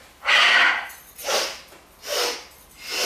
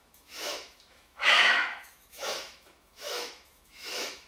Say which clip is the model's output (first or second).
second